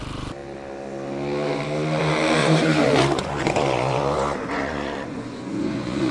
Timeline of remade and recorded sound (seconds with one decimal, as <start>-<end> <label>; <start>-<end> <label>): 0.0-2.4 recorded; 2.4-6.1 remade